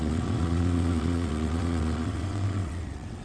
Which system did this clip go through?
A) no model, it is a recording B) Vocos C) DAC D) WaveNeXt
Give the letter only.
D